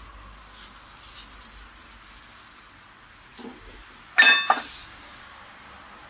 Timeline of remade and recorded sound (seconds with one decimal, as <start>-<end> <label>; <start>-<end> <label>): 0.0-6.1 recorded